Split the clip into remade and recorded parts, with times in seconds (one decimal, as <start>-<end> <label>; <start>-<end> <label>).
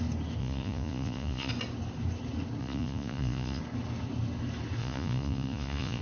0.0-0.4 recorded; 0.4-1.5 remade; 1.5-2.6 recorded; 2.6-3.6 remade; 3.6-4.8 recorded; 4.8-6.0 remade